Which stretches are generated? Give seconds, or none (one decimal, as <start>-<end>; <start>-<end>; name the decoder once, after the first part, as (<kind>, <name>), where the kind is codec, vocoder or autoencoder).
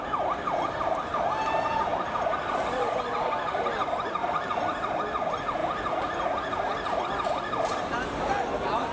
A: none